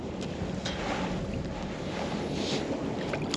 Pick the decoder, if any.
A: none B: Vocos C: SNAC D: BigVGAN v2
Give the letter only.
A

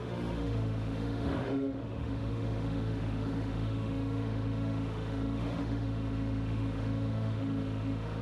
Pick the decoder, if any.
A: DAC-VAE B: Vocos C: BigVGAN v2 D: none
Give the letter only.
A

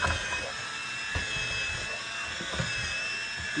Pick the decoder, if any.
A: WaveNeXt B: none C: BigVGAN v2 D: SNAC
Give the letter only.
B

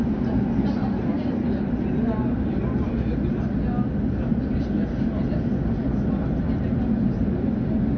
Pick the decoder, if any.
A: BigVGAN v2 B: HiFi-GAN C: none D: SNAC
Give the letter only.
C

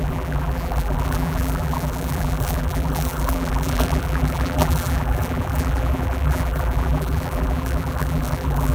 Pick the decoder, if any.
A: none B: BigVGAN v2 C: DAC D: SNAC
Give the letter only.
B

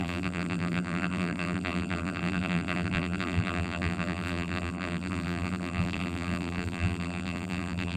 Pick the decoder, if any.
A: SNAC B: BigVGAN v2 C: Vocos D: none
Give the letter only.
B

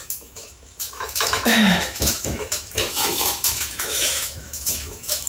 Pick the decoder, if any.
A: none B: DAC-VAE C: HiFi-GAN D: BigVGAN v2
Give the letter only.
B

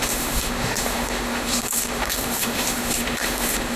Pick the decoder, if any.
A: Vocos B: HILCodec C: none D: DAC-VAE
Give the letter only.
D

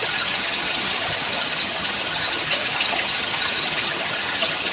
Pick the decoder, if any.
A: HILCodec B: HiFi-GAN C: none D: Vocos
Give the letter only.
B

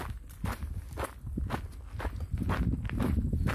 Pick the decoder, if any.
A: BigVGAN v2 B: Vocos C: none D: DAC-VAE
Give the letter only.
C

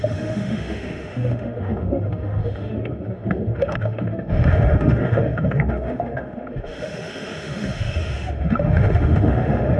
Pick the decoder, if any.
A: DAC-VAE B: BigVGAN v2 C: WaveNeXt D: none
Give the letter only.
A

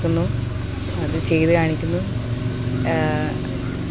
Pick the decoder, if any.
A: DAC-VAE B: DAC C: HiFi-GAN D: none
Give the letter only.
D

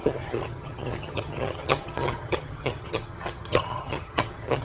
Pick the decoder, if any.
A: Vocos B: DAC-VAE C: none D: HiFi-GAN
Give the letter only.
D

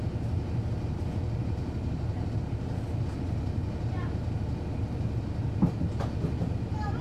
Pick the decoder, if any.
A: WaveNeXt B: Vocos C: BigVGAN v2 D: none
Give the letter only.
D